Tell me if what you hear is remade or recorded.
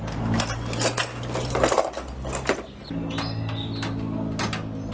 recorded